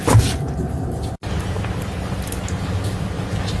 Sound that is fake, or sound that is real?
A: real